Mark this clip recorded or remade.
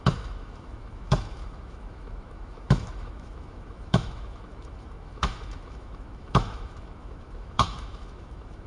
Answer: remade